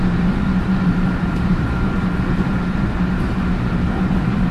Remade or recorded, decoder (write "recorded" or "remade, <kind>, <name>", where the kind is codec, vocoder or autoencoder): remade, vocoder, BigVGAN v2